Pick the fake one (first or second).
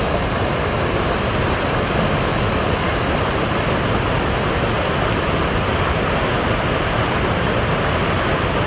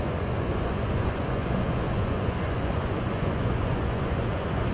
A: second